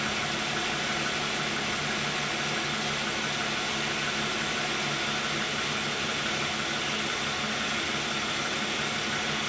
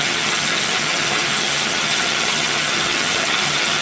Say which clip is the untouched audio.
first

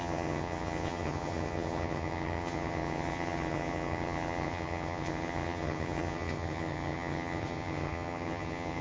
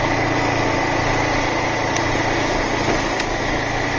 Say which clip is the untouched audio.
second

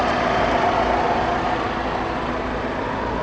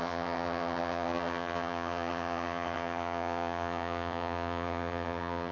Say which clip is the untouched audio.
first